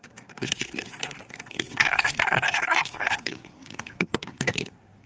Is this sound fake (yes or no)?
yes